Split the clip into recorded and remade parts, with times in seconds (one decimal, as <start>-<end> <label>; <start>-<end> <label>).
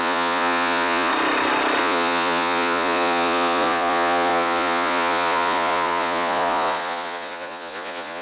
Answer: 0.0-1.1 remade; 1.1-1.8 recorded; 1.8-8.2 remade